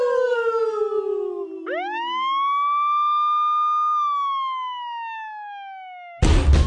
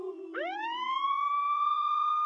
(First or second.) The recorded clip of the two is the first